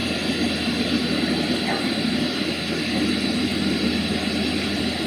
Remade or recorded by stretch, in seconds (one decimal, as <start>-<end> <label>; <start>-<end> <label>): 0.0-5.1 recorded